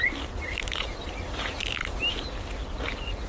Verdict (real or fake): real